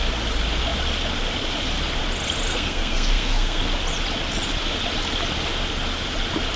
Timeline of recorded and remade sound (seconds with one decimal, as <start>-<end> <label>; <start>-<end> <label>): 0.0-2.5 recorded; 2.5-3.6 remade; 3.6-6.6 recorded